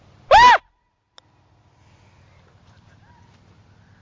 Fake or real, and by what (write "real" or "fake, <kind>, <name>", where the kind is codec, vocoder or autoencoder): real